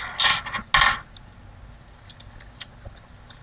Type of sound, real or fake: real